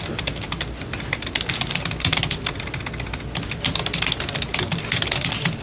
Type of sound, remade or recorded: recorded